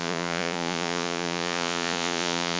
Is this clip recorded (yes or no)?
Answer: no